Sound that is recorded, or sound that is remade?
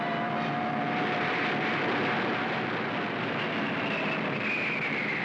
recorded